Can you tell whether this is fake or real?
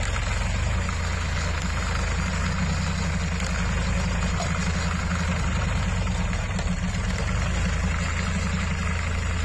real